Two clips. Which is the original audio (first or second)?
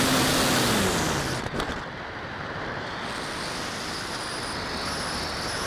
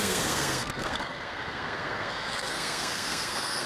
first